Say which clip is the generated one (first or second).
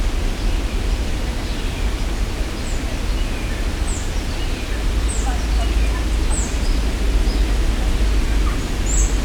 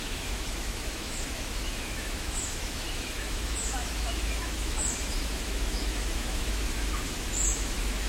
second